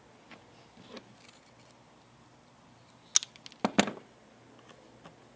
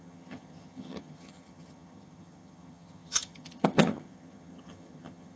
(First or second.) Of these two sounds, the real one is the first